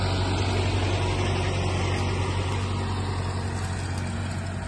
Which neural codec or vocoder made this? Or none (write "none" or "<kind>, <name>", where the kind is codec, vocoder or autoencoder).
none